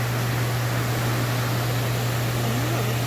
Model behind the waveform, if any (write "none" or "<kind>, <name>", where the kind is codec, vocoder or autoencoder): none